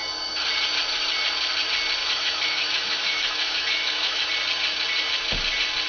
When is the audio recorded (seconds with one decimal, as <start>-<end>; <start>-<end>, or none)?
0.0-2.0; 4.3-5.9